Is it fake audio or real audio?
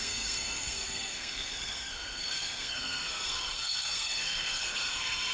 fake